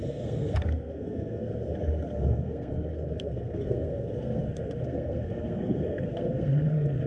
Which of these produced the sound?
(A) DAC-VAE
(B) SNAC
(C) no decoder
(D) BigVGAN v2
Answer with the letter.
B